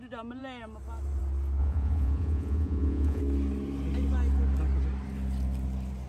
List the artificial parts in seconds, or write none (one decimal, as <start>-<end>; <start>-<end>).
1.6-3.2